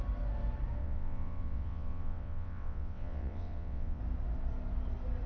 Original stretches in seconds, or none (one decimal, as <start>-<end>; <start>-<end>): 0.0-0.8; 4.0-5.3